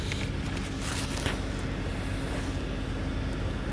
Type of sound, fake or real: real